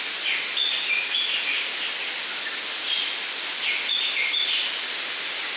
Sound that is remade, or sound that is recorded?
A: recorded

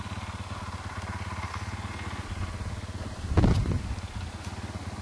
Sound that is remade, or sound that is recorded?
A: recorded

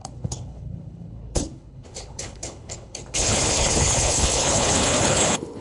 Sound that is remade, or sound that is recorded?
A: remade